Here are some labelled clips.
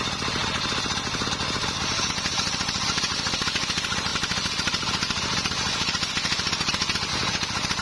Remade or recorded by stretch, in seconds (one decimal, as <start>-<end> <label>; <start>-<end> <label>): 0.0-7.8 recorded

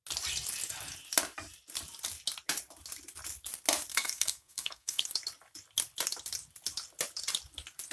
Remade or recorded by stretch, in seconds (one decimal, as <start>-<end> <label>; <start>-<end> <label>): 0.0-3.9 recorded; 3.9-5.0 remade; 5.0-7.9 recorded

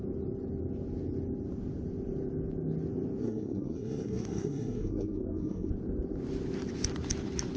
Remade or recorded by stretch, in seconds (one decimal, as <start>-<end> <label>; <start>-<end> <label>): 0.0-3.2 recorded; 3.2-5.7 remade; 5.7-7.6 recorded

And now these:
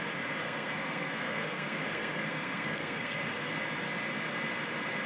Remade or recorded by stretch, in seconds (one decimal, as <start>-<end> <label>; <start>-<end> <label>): 0.0-0.4 recorded; 0.4-3.5 remade; 3.5-5.1 recorded